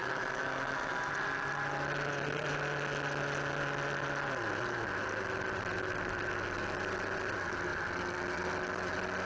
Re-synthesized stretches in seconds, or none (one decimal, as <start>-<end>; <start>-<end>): 0.0-1.1